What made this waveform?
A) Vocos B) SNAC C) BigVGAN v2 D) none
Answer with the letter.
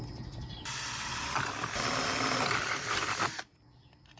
C